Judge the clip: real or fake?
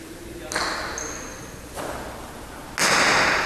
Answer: real